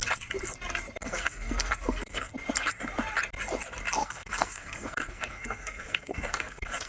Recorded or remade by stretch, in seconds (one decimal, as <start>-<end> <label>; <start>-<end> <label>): 0.0-1.0 recorded; 1.0-2.3 remade; 2.3-4.0 recorded; 4.0-6.9 remade